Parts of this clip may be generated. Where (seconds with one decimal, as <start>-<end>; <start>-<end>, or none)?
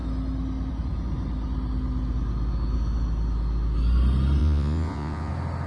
4.4-5.3